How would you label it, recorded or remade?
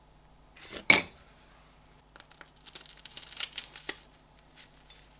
recorded